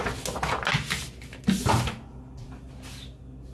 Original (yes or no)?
yes